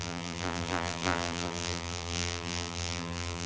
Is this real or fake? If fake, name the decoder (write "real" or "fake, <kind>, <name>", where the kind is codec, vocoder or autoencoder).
fake, vocoder, BigVGAN v2